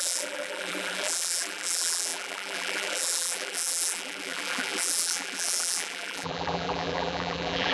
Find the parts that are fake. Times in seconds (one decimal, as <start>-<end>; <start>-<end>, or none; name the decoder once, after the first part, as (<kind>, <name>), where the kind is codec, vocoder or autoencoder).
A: 0.0-7.7 (vocoder, BigVGAN v2)